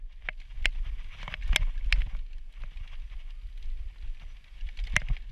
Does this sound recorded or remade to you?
recorded